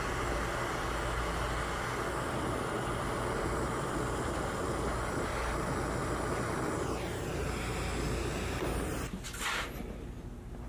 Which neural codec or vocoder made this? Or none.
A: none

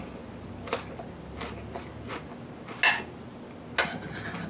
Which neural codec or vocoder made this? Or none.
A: none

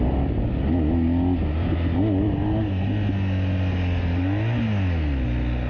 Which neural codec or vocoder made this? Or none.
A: none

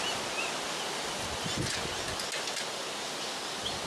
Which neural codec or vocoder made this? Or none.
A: none